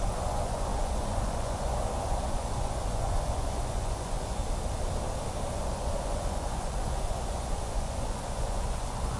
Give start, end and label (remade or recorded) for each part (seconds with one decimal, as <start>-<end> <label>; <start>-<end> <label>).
0.0-4.4 remade; 4.4-5.5 recorded; 5.5-9.2 remade